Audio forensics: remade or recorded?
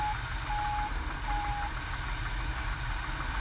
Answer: recorded